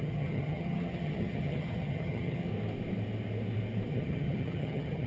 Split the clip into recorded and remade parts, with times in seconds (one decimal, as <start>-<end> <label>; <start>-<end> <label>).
0.0-2.5 remade; 2.5-3.9 recorded; 3.9-5.1 remade